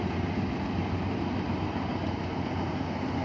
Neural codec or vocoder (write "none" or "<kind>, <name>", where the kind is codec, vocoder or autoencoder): none